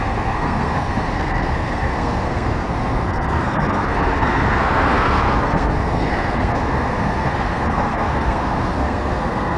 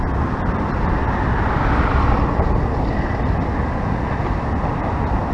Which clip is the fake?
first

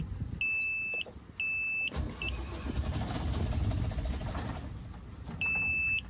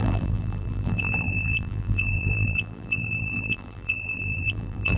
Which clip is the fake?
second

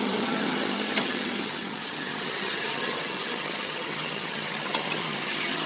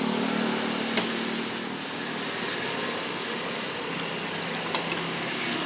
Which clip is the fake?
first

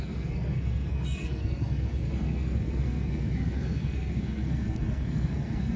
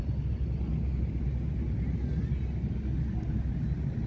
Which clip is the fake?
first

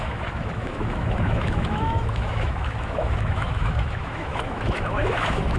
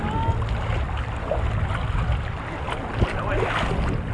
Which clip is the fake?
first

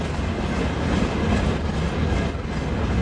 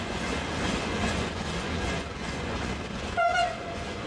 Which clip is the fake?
second